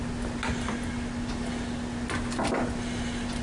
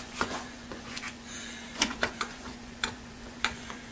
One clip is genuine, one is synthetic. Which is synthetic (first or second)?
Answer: second